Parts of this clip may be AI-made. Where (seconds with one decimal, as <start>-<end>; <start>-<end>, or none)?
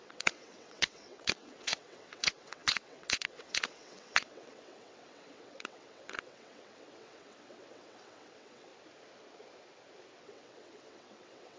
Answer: 0.0-8.7; 10.2-11.6